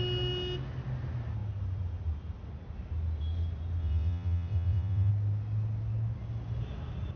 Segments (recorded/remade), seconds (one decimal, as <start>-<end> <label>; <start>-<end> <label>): 0.0-3.8 recorded; 3.8-5.1 remade; 5.1-7.2 recorded